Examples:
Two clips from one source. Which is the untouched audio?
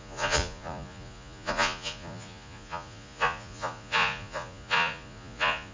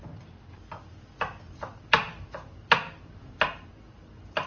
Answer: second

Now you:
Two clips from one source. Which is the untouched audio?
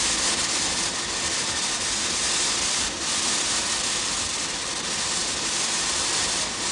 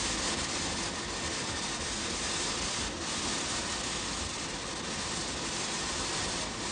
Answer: second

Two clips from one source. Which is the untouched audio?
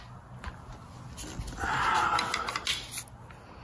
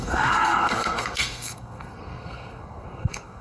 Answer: first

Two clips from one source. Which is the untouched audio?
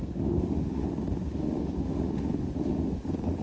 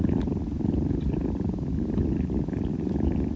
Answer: second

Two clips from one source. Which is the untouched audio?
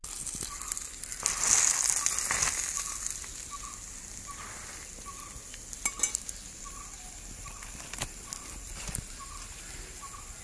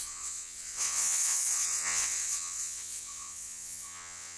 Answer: first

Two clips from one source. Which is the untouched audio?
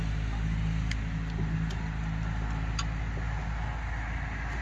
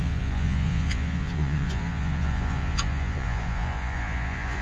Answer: first